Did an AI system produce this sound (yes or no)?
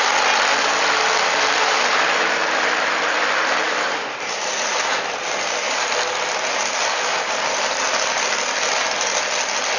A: no